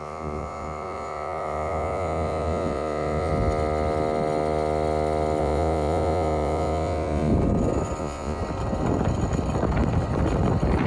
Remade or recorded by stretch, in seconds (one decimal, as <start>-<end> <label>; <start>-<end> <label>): 0.0-3.3 remade; 3.3-5.4 recorded; 5.4-7.3 remade; 7.3-8.0 recorded; 8.0-8.4 remade; 8.4-10.9 recorded